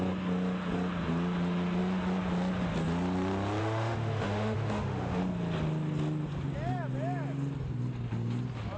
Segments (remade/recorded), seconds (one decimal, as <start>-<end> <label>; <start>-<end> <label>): 0.0-3.6 recorded; 3.6-5.2 remade; 5.2-8.8 recorded